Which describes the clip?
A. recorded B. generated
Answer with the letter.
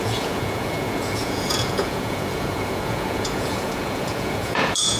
B